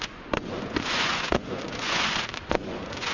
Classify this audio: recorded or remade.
remade